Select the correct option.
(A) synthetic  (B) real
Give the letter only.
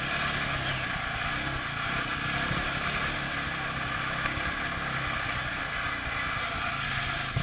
B